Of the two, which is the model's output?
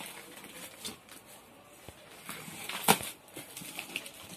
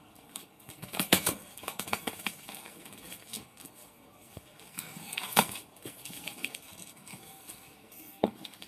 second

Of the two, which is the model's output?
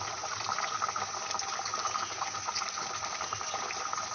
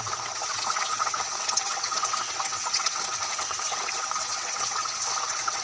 second